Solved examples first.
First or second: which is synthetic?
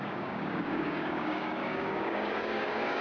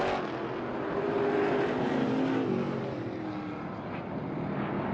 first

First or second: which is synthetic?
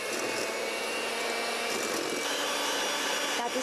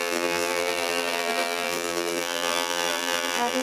second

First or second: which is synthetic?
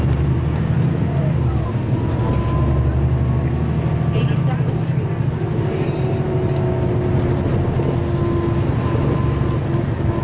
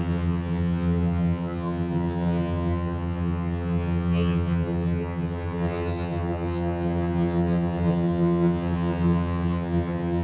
second